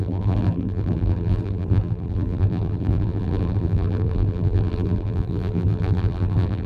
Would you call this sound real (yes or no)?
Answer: no